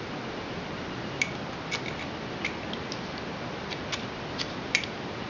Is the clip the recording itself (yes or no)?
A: yes